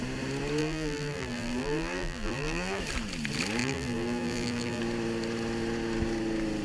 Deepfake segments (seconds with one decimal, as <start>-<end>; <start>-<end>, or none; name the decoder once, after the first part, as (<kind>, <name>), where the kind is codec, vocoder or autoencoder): 0.6-2.8 (vocoder, BigVGAN v2); 3.6-4.8